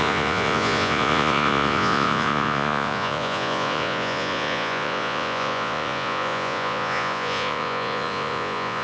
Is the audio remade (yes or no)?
yes